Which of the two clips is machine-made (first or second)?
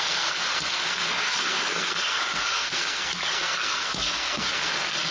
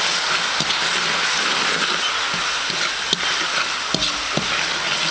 first